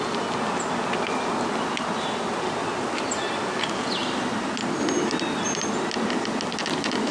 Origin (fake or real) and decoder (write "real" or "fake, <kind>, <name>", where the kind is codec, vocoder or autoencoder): real